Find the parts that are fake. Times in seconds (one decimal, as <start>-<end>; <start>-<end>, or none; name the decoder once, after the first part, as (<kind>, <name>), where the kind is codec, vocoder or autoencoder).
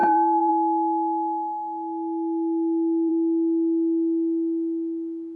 0.0-0.5 (vocoder, BigVGAN v2)